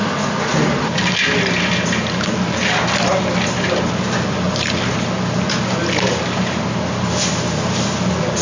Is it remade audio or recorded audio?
recorded